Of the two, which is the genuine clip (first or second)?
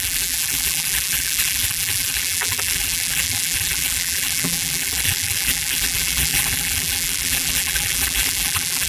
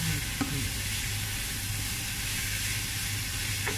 second